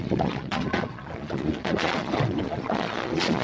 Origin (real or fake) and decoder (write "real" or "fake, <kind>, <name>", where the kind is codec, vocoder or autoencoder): fake, vocoder, Vocos